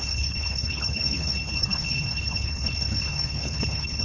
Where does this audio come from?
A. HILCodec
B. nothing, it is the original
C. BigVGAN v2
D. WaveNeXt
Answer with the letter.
A